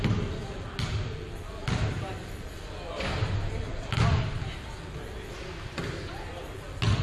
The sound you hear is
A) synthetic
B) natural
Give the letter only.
B